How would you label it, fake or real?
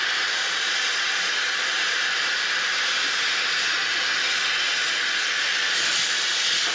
real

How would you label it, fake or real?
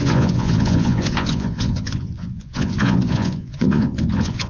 fake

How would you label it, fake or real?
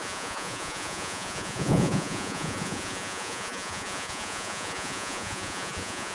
fake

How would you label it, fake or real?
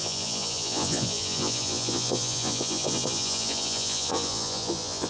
fake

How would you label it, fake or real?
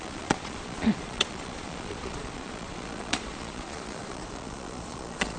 fake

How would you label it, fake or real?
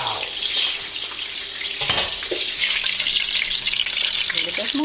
real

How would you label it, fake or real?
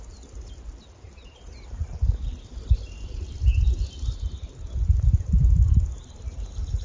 real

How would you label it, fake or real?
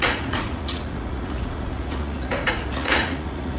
fake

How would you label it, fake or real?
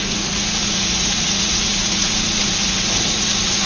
fake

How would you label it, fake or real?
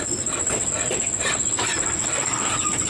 real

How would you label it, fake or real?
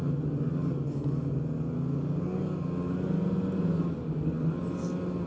real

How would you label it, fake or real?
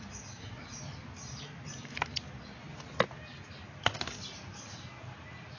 real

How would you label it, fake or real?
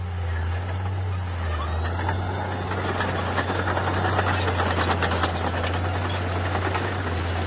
real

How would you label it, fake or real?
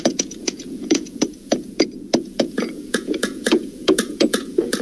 fake